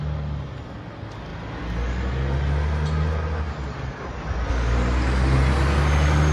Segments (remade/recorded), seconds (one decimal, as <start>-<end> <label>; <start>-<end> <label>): 0.0-6.3 recorded